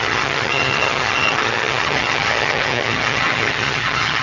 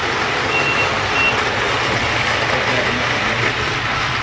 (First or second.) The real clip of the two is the second